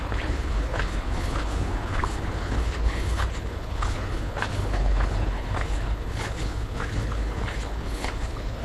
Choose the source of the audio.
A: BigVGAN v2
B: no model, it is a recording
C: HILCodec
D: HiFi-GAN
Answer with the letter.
C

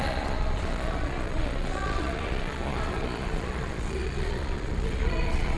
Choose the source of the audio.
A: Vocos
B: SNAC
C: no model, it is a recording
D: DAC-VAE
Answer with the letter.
A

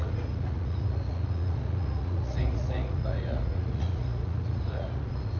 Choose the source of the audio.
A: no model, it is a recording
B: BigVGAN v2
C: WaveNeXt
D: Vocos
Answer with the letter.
D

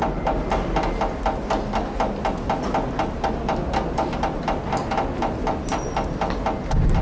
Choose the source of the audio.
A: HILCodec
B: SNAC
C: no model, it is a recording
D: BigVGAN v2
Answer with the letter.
C